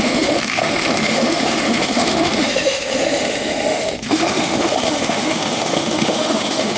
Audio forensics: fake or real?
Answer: fake